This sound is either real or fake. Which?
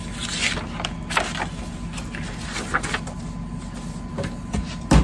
real